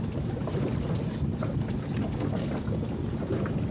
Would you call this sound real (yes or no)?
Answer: yes